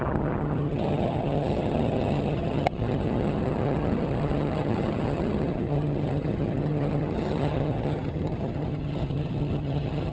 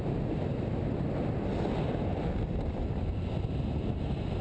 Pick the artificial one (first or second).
first